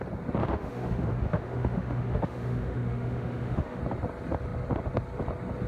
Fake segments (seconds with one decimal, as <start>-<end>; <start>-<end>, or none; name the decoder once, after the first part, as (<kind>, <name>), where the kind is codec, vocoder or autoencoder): 0.4-3.8 (autoencoder, DAC-VAE)